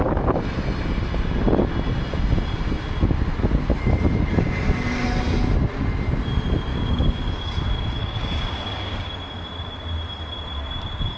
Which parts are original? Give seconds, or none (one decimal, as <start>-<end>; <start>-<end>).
0.0-6.7; 7.5-8.0; 9.1-11.2